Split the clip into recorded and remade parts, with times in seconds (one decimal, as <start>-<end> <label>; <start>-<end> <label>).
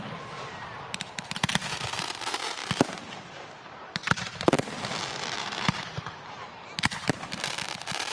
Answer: 0.0-2.6 remade; 2.6-3.6 recorded; 3.6-4.0 remade; 4.0-5.4 recorded; 5.4-8.1 remade